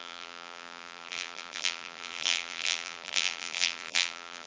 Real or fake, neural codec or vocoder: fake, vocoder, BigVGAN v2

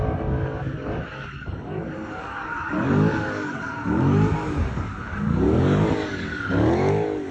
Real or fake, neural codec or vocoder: fake, codec, DAC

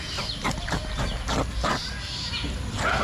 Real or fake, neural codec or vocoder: real